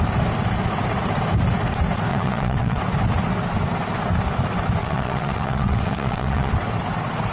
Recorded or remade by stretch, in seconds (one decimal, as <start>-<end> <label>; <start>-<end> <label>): 0.0-2.1 recorded; 2.1-2.8 remade; 2.8-4.8 recorded; 4.8-6.5 remade; 6.5-7.3 recorded